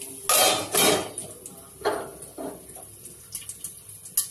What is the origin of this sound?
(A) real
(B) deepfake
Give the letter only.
A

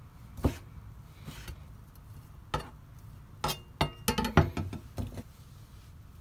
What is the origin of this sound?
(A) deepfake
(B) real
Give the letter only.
B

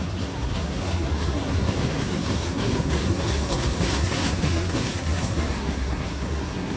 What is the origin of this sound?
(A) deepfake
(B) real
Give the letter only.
A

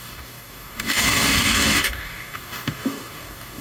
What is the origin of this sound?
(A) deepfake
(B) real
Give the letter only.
A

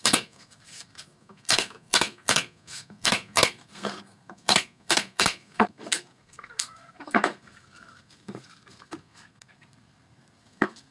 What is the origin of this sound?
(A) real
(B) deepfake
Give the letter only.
B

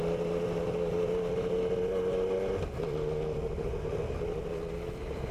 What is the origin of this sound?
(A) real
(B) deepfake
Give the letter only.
A